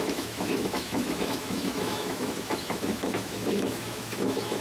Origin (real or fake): fake